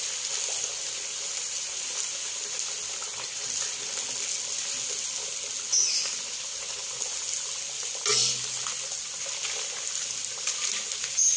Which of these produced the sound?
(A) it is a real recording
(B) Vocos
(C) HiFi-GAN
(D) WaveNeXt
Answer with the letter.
A